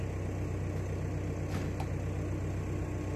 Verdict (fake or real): real